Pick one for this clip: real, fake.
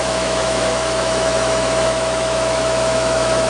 fake